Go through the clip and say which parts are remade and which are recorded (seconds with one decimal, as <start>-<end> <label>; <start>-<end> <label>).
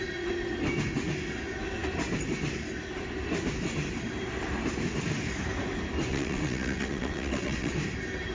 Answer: 0.0-6.1 recorded; 6.1-7.7 remade; 7.7-8.3 recorded